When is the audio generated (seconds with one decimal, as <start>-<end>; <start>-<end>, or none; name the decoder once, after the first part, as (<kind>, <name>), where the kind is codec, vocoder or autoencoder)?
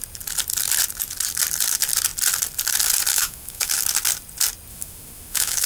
3.1-3.8 (autoencoder, DAC-VAE); 4.7-5.7